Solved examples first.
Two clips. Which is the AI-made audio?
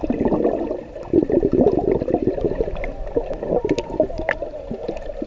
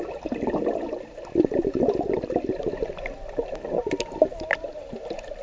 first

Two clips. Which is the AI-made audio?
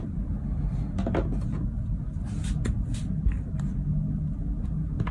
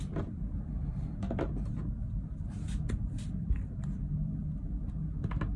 second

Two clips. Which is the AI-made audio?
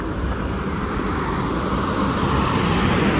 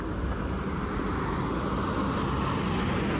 first